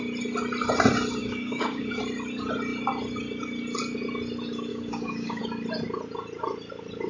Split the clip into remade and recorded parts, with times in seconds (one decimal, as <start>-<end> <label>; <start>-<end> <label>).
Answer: 0.0-1.2 recorded; 1.2-2.0 remade; 2.0-4.7 recorded; 4.7-5.4 remade; 5.4-7.1 recorded